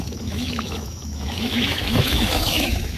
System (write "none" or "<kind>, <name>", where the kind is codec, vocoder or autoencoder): autoencoder, DAC-VAE